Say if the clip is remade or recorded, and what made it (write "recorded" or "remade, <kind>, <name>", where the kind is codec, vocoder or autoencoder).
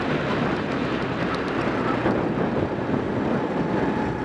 recorded